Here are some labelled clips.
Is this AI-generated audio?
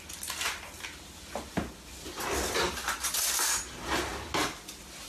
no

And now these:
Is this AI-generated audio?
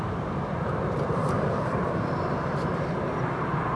yes